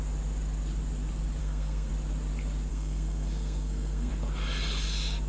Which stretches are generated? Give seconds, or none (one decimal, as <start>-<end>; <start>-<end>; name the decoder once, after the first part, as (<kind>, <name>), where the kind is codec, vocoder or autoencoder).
1.4-1.9 (codec, SNAC); 2.7-4.1